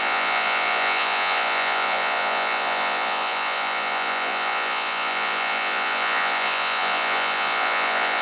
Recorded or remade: remade